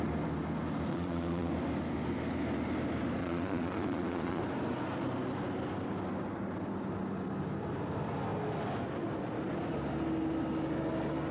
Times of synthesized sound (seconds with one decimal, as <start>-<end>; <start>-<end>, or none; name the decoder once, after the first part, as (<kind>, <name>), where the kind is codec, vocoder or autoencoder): 0.9-1.5 (vocoder, Vocos); 3.2-4.4